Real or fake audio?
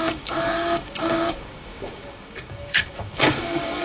fake